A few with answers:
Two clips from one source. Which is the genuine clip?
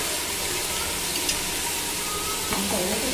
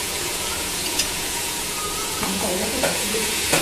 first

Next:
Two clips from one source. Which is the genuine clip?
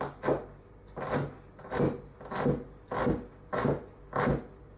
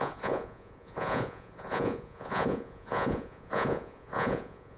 first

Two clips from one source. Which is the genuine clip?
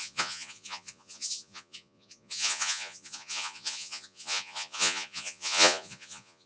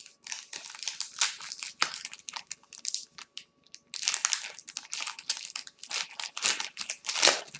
second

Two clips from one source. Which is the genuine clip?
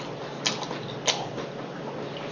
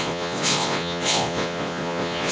first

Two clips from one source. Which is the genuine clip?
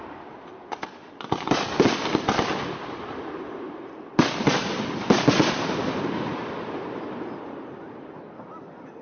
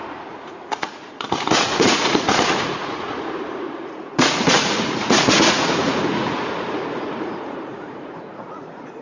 first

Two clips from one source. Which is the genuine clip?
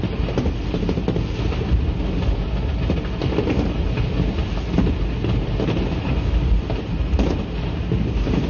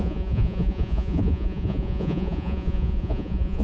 first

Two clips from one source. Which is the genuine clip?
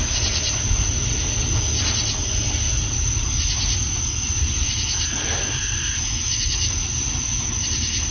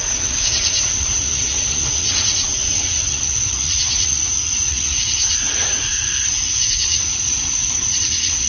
first